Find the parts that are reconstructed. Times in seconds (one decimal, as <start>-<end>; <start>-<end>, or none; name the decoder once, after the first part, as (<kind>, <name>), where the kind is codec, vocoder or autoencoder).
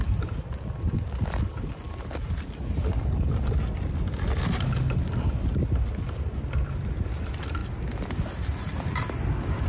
none